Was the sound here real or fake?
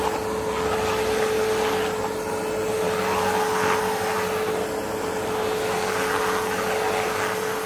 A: real